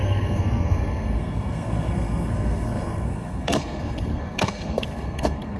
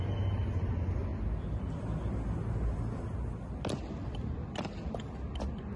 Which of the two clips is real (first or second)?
second